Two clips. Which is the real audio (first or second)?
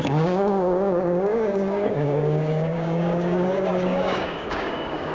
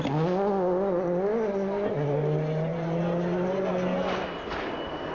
second